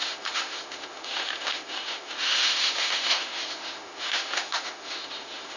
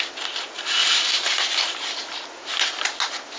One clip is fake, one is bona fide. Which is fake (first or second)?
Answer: first